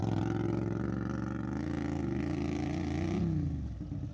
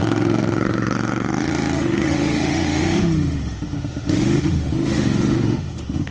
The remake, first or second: second